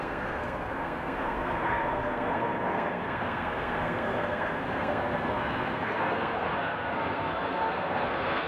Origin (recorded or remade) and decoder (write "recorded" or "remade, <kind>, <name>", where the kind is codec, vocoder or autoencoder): remade, codec, SNAC